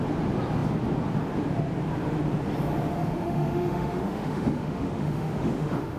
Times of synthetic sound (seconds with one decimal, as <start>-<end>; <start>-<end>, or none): 3.0-6.0